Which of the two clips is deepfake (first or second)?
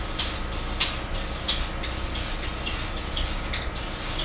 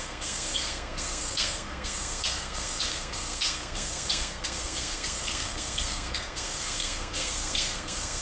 second